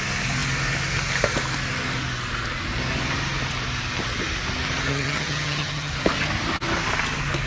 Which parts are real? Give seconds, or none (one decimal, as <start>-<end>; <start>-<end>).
0.0-4.9; 5.9-7.5